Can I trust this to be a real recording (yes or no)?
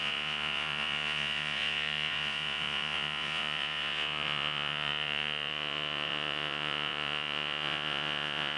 no